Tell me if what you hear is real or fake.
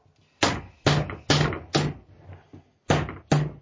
real